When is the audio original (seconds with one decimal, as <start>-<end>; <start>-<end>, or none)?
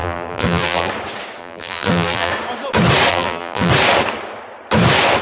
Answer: 0.9-1.4; 2.3-3.1; 3.7-5.2